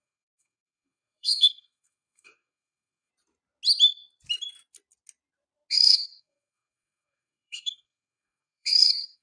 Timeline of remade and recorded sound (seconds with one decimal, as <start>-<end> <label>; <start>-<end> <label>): 0.0-3.1 remade; 3.1-5.7 recorded; 5.7-9.2 remade